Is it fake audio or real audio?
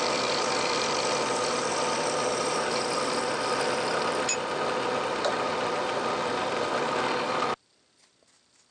real